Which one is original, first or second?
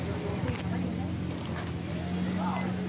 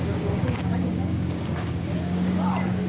first